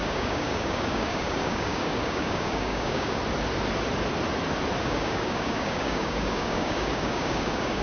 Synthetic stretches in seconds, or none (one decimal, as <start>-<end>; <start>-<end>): 0.0-3.2; 4.8-7.8